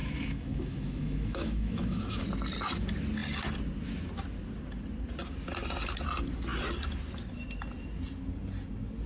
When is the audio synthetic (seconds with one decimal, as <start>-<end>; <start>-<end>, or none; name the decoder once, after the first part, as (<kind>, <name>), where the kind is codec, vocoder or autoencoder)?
0.0-2.2 (autoencoder, DAC-VAE)